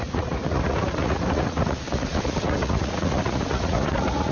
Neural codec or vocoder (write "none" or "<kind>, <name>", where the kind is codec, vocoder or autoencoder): vocoder, Vocos